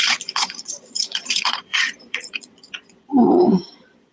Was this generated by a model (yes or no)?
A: yes